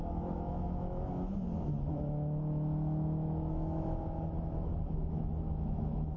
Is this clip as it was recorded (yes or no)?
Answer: no